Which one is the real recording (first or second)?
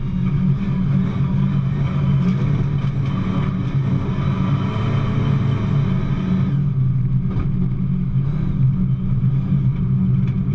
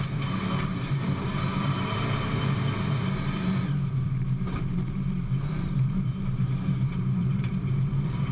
first